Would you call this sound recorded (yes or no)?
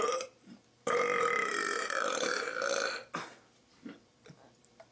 no